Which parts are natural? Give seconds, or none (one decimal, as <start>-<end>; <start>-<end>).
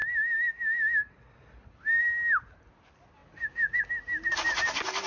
0.0-5.1